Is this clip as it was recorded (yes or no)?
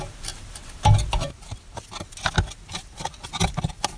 yes